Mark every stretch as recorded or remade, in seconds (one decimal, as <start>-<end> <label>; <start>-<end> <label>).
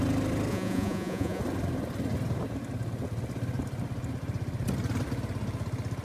0.0-0.5 recorded; 0.5-1.4 remade; 1.4-6.0 recorded